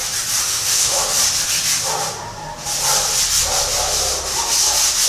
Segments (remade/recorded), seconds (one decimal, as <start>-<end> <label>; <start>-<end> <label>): 0.0-0.4 recorded; 0.4-1.0 remade; 1.0-5.1 recorded

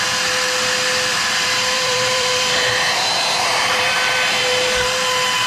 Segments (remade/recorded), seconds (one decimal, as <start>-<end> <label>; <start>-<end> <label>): 0.0-1.1 recorded; 1.1-4.4 remade; 4.4-5.5 recorded

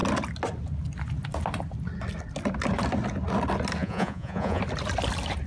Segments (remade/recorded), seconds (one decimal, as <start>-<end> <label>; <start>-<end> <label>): 0.0-3.8 recorded; 3.8-4.6 remade; 4.6-5.5 recorded

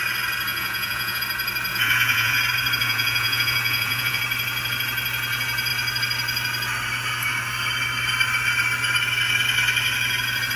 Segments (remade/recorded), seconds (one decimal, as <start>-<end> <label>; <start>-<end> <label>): 0.0-0.5 recorded; 0.5-1.2 remade; 1.2-1.7 recorded; 1.7-2.4 remade; 2.4-2.8 recorded; 2.8-4.2 remade; 4.2-10.6 recorded

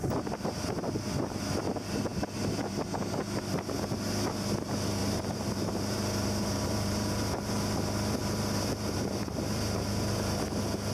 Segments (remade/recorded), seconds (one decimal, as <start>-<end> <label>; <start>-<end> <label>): 0.0-5.0 recorded; 5.0-7.5 remade; 7.5-8.2 recorded; 8.2-10.4 remade; 10.4-10.9 recorded

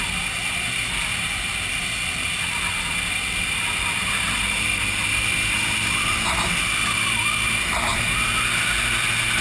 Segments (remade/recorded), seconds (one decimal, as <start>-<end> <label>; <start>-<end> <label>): 0.0-9.4 recorded

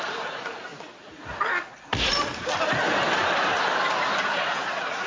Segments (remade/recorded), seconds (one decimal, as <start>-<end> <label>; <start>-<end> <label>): 0.0-5.1 recorded

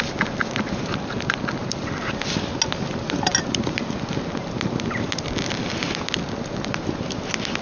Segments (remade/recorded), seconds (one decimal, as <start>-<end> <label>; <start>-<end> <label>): 0.0-7.6 recorded